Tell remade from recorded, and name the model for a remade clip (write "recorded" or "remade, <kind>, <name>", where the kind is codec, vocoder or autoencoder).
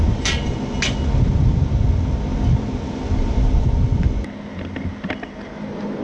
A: recorded